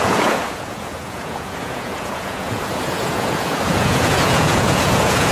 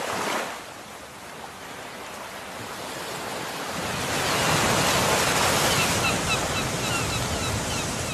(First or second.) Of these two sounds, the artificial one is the first